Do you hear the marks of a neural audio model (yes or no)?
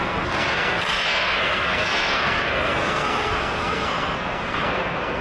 yes